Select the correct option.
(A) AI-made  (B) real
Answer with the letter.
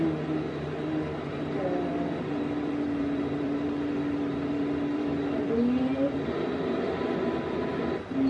A